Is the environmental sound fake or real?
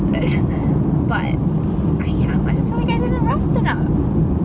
fake